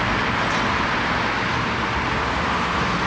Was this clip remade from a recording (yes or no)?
no